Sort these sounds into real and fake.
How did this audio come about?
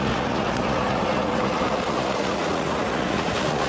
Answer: fake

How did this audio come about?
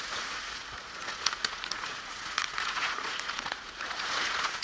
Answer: fake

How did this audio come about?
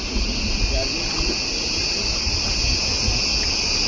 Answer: real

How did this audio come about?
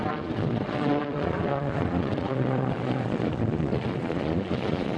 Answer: fake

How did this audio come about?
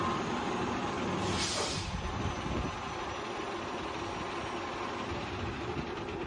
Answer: real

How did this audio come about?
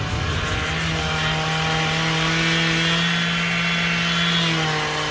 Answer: real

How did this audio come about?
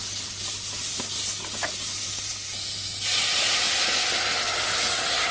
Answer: real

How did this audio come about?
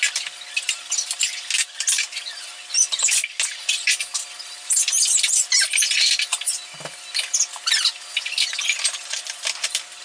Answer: real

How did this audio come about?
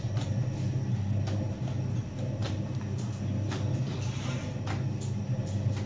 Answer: real